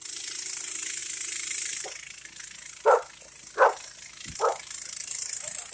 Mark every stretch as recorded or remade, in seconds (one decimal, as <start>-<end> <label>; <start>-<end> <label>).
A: 0.0-5.7 recorded